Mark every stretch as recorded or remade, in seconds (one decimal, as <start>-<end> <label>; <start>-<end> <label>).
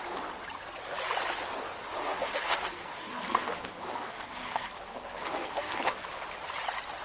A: 0.0-2.0 recorded; 2.0-6.0 remade; 6.0-7.0 recorded